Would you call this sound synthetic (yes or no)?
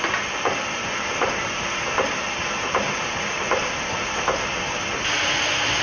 no